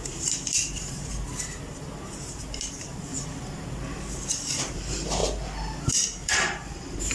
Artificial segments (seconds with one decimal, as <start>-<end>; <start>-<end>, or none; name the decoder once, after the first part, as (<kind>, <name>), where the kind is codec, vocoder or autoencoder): 0.0-3.1 (vocoder, BigVGAN v2); 4.3-5.2; 5.9-7.1